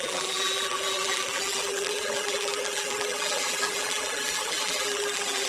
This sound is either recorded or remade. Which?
remade